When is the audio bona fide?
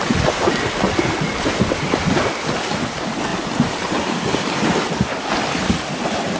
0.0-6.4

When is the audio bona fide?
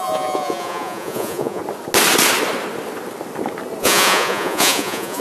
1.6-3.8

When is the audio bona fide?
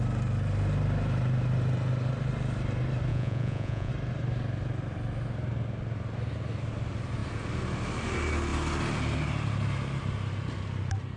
0.0-3.1; 3.9-11.2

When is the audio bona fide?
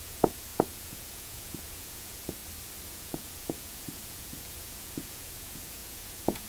2.4-2.9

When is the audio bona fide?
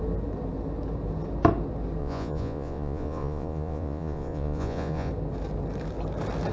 0.0-2.0; 5.1-6.5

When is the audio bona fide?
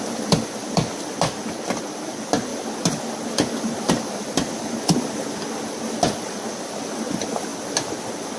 0.0-8.4